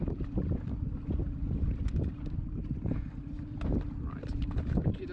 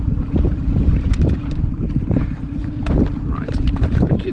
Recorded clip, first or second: first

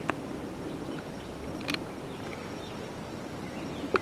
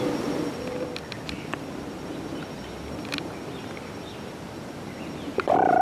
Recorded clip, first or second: second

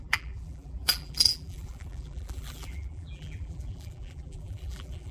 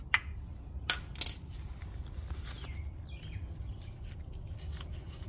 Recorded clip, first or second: second